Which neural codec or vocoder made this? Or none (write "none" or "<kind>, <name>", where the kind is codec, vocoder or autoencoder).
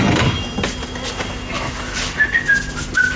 none